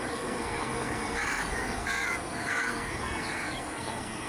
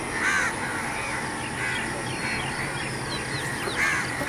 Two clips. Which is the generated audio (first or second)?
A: first